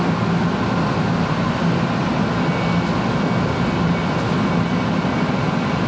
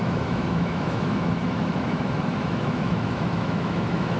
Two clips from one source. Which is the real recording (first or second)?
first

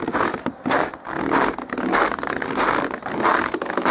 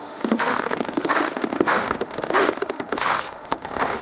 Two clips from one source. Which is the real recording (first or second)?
first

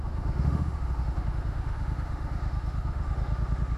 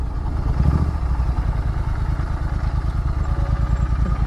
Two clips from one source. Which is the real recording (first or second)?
second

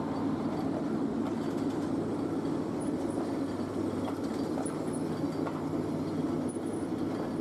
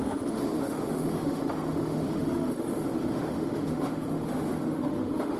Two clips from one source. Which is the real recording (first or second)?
first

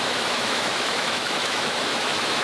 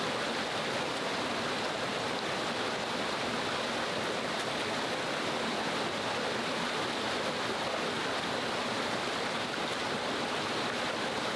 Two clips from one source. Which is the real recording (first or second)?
second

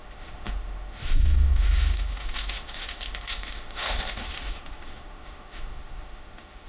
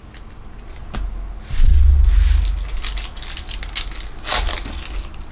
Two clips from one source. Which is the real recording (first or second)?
second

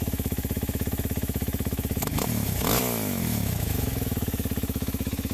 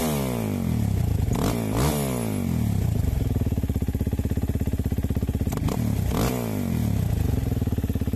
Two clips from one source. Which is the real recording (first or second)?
second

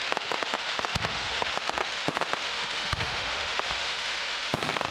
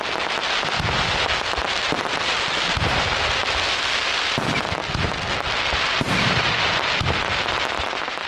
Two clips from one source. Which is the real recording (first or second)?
second